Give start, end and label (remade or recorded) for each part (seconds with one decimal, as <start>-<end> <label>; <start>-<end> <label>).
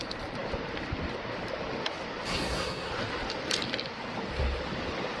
0.0-2.3 recorded; 2.3-2.9 remade; 2.9-5.2 recorded